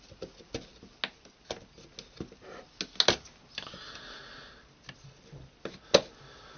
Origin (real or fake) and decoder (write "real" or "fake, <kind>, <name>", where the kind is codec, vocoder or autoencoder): real